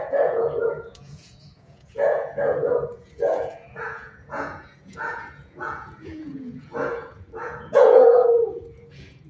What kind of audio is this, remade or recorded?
remade